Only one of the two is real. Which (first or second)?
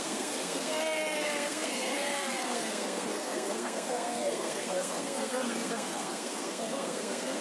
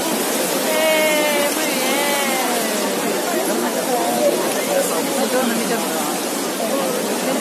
second